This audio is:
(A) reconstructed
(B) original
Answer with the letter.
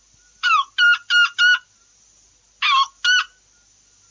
B